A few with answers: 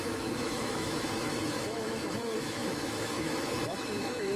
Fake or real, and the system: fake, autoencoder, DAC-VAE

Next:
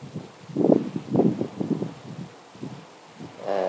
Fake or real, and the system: real